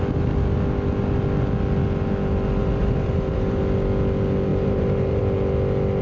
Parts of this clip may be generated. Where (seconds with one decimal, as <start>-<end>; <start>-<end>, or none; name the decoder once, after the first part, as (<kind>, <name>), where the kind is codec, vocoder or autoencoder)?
2.6-3.6 (vocoder, BigVGAN v2); 4.5-5.2